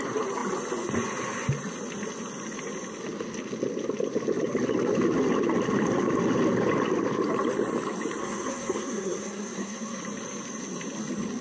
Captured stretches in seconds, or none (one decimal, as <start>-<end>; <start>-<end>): 0.0-8.2; 10.0-11.4

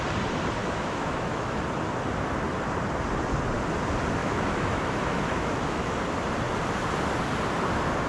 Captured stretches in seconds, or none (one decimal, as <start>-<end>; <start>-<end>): 0.0-0.6; 1.6-4.2; 6.0-8.1